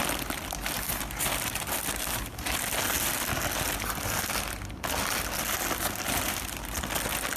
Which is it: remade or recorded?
recorded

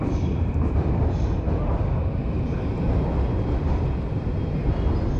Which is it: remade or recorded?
remade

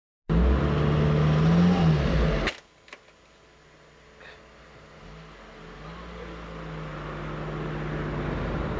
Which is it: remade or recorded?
recorded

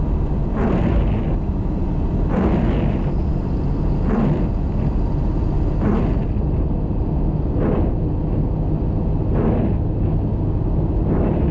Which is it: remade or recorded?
recorded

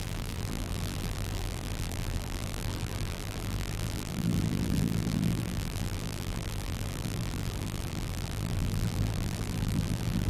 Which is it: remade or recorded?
remade